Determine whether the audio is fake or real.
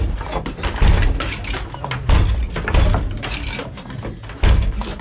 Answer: real